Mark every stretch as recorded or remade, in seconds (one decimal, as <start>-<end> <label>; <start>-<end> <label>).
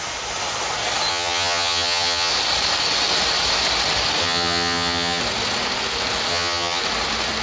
0.0-1.1 recorded; 1.1-2.3 remade; 2.3-4.2 recorded; 4.2-5.2 remade; 5.2-6.3 recorded; 6.3-6.8 remade; 6.8-7.4 recorded